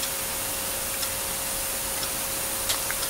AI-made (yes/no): no